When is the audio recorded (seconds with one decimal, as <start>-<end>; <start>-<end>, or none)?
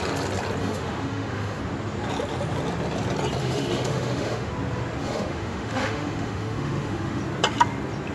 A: 0.0-0.6; 1.6-3.4; 4.5-5.0; 7.2-8.1